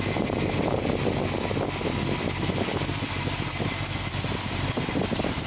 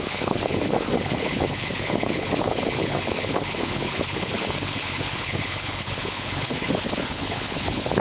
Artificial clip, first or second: second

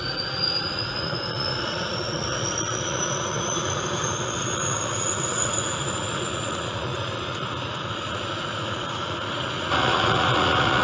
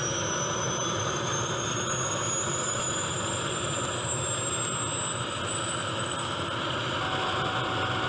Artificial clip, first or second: first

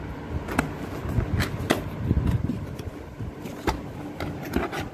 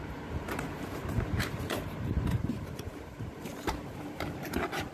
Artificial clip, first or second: second